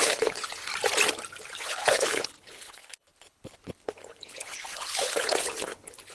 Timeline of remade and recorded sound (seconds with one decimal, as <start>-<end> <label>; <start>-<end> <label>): 0.0-0.7 remade; 0.7-1.6 recorded; 1.6-6.1 remade